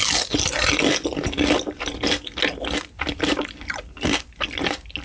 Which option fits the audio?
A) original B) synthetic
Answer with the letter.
A